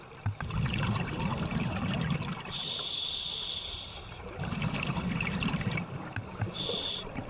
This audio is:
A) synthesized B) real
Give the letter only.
B